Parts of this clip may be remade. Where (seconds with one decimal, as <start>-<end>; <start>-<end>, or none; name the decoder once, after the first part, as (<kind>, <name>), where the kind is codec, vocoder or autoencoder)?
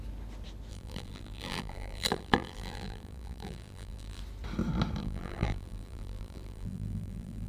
0.7-4.2 (vocoder, BigVGAN v2); 5.0-7.5